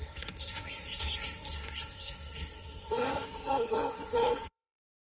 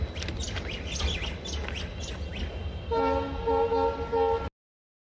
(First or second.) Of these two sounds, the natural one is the second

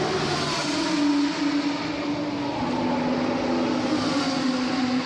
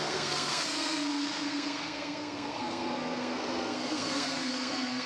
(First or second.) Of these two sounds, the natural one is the first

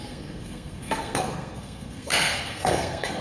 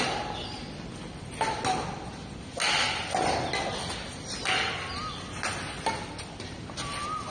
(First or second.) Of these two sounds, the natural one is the second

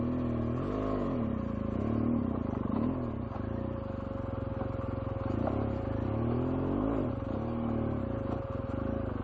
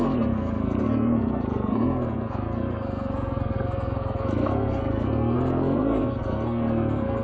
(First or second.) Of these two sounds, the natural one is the first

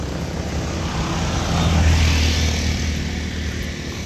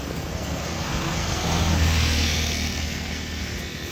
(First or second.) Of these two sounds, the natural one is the first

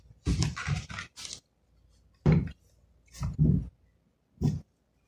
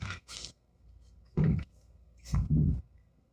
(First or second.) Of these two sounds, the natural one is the first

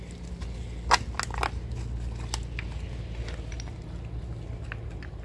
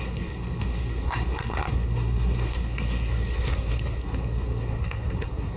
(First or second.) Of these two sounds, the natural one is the first